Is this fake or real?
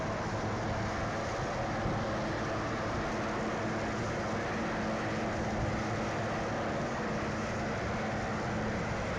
real